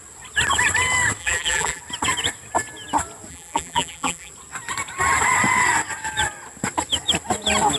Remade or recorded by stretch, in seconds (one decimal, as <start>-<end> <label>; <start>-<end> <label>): 0.0-1.2 recorded; 1.2-1.8 remade; 1.8-3.3 recorded; 3.3-4.3 remade; 4.3-7.8 recorded